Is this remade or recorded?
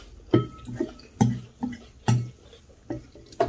recorded